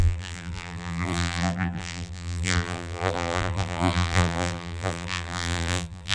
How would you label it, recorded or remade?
remade